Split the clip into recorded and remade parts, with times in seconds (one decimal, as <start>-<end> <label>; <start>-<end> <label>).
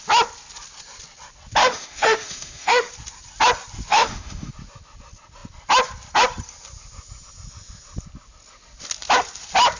0.0-1.6 recorded; 1.6-2.9 remade; 2.9-3.9 recorded; 3.9-4.5 remade; 4.5-9.8 recorded